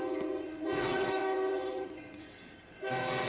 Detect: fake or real fake